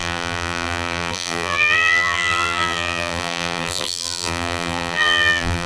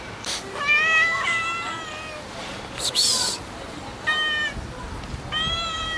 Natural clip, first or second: second